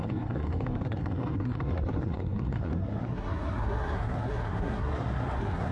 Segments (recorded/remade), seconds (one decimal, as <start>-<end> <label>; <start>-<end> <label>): 0.0-5.7 remade